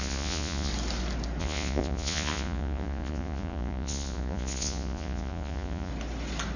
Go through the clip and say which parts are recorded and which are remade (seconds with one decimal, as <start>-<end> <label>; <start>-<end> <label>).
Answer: 0.0-0.7 remade; 0.7-1.4 recorded; 1.4-5.9 remade; 5.9-6.6 recorded